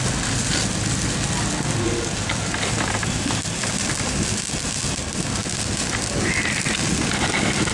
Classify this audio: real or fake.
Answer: real